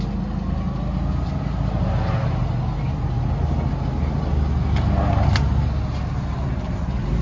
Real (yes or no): yes